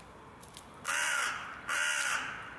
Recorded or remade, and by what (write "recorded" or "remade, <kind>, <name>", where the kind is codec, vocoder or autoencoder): recorded